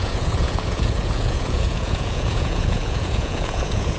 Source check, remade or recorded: remade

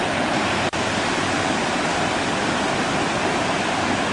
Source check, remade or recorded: recorded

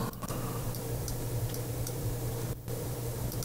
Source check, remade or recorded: remade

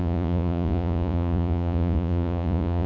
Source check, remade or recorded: remade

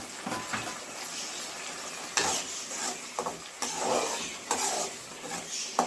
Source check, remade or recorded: recorded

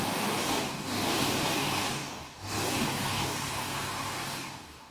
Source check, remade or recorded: remade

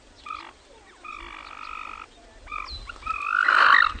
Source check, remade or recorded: recorded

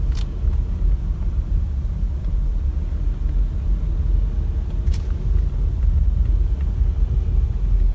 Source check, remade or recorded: recorded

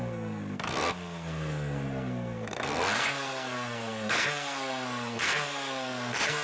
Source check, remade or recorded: remade